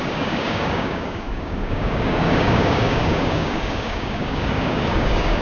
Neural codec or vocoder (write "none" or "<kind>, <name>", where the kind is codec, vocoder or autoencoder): codec, DAC